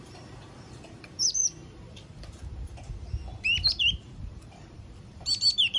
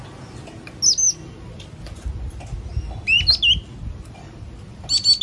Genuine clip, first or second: second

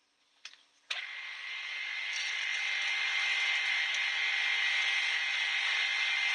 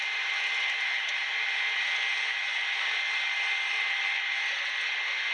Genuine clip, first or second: first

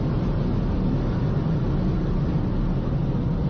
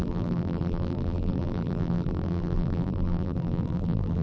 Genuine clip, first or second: first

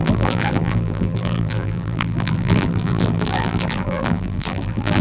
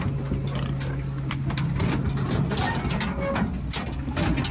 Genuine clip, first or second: second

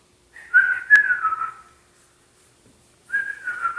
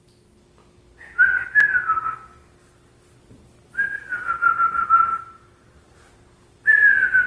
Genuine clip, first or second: second